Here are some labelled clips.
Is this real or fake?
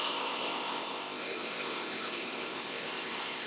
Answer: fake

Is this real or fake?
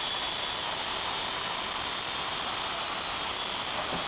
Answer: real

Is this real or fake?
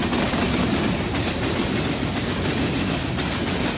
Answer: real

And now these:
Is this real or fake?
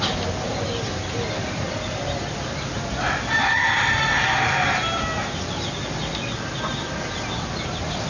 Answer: real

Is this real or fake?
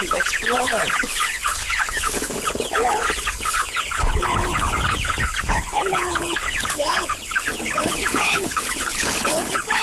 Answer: fake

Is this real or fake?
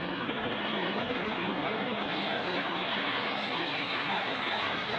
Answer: fake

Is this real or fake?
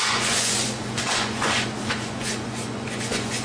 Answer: fake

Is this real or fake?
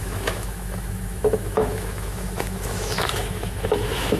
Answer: fake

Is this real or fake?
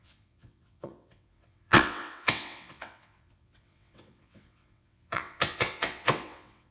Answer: fake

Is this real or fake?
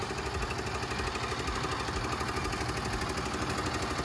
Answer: real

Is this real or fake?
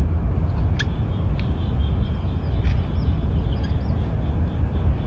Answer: real